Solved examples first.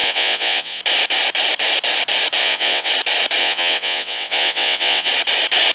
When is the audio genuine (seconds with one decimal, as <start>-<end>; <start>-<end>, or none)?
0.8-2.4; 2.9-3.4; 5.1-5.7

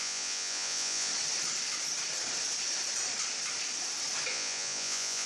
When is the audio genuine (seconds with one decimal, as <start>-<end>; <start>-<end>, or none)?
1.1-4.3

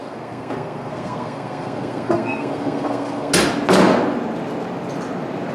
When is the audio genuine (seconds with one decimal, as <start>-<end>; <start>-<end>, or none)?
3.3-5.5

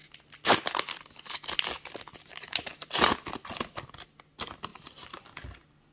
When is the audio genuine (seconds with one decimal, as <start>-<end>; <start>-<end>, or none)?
0.0-2.1; 3.1-4.7; 5.2-5.9

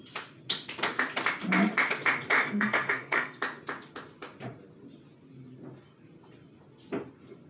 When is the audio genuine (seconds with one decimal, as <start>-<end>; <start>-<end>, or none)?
0.0-2.4; 3.4-7.5